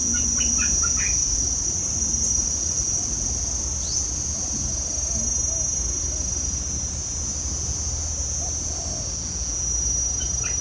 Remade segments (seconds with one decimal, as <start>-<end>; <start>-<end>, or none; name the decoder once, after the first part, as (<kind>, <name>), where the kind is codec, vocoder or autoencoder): 1.2-3.3 (vocoder, Vocos)